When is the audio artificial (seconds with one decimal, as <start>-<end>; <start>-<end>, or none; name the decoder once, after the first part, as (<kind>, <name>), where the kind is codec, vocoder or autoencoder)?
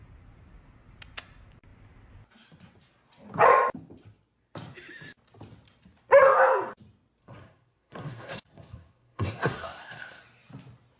7.2-10.2 (codec, SNAC)